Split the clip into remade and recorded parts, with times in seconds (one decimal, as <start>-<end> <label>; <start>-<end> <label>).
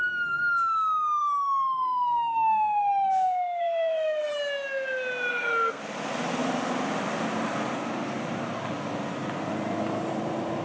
0.0-1.2 recorded; 1.2-4.3 remade; 4.3-5.3 recorded; 5.3-5.8 remade; 5.8-10.6 recorded